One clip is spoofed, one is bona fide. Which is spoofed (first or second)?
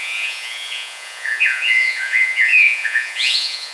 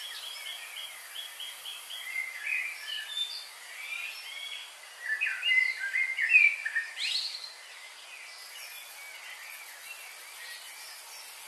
first